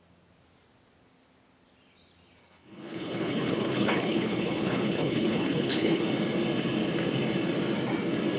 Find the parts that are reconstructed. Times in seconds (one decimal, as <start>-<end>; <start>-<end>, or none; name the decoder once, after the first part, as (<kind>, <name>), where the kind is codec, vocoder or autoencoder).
2.4-6.0 (codec, HILCodec)